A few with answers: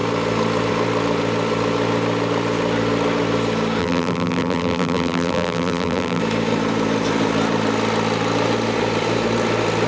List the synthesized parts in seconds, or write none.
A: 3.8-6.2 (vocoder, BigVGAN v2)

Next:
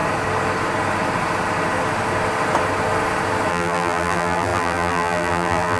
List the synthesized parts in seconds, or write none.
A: 3.5-5.8 (vocoder, BigVGAN v2)